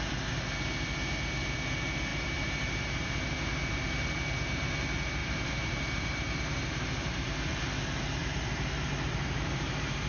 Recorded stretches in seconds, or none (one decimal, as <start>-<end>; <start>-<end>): 0.0-2.1; 4.7-5.2; 7.6-8.2